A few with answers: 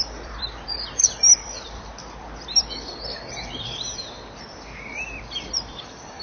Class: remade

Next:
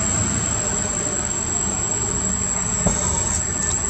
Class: recorded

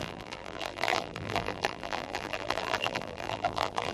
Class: remade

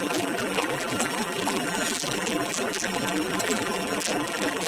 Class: remade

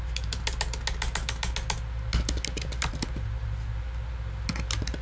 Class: recorded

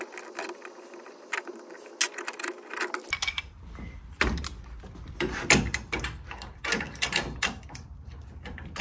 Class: recorded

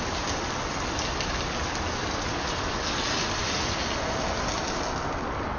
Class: recorded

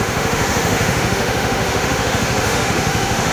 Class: remade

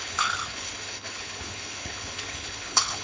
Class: remade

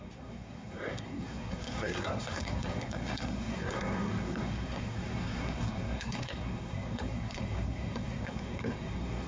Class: remade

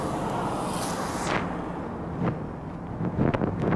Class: recorded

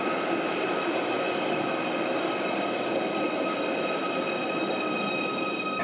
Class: recorded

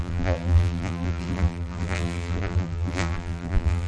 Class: remade